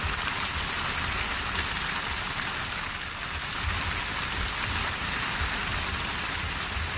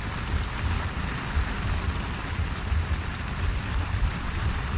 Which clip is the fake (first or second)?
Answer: second